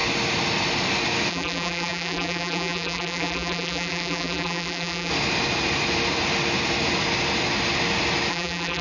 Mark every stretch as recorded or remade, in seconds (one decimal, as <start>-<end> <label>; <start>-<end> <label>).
0.0-1.3 recorded; 1.3-5.1 remade; 5.1-8.3 recorded; 8.3-8.8 remade